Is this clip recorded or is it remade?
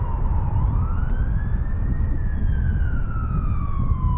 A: recorded